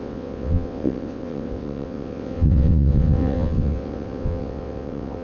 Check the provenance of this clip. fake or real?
fake